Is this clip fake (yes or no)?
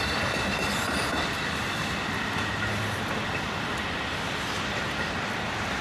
no